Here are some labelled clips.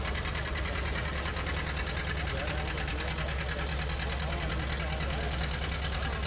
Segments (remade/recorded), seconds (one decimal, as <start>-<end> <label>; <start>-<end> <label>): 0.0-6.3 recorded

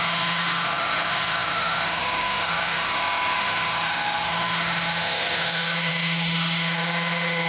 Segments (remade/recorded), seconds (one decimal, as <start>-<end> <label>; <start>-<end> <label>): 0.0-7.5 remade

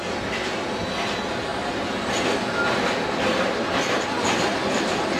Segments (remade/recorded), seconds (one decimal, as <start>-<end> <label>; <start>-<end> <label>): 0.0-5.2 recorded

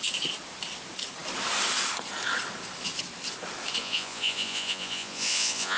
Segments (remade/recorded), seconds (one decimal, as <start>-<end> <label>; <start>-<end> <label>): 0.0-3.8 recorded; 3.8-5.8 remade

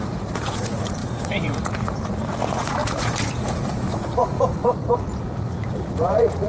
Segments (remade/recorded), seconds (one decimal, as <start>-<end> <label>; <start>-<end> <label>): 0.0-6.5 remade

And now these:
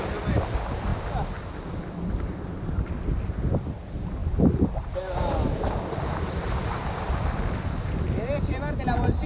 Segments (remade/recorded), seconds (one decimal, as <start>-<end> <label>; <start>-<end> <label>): 0.0-9.3 recorded

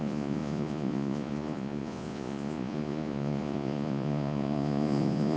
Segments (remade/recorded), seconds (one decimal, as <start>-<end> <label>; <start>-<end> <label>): 0.0-5.4 remade